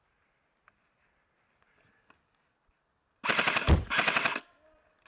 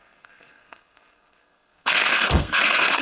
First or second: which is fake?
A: second